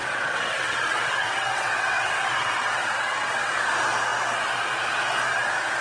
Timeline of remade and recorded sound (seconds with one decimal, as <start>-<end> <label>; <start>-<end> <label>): 0.0-3.5 remade; 3.5-5.8 recorded